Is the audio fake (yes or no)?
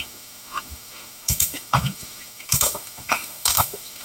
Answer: yes